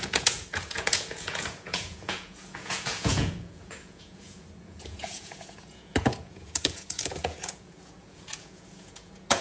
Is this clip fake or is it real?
fake